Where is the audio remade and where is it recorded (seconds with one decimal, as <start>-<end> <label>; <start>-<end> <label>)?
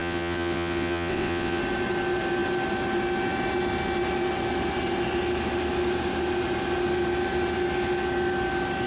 0.0-1.6 remade; 1.6-8.9 recorded